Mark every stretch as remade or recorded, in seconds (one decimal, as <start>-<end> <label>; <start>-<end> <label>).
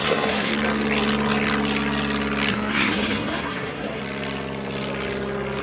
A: 0.0-0.5 remade; 0.5-2.5 recorded; 2.5-4.0 remade; 4.0-5.6 recorded